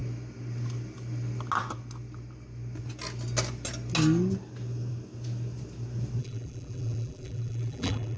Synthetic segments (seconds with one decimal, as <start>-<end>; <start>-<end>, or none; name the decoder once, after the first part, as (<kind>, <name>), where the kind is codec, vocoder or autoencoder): 6.2-8.2 (vocoder, BigVGAN v2)

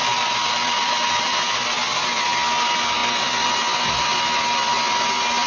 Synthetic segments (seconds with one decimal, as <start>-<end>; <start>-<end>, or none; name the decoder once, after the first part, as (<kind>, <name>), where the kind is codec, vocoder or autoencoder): 0.0-0.9 (vocoder, BigVGAN v2)